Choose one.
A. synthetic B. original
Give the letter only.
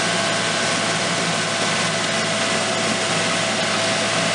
B